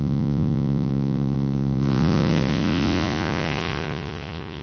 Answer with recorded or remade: remade